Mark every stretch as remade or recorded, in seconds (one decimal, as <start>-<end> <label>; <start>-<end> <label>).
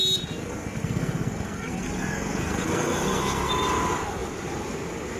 0.0-0.4 recorded; 0.4-3.5 remade; 3.5-5.2 recorded